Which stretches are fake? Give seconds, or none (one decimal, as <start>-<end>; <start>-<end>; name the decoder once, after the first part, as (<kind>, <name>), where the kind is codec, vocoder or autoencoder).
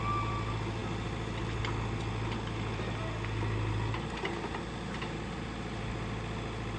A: none